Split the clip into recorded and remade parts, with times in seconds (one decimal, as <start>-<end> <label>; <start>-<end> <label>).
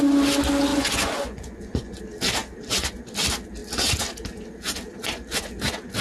0.0-0.7 recorded; 0.7-2.0 remade; 2.0-6.0 recorded